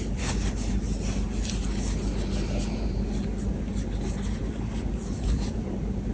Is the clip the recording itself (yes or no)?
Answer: yes